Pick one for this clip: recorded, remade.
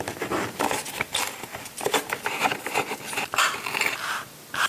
recorded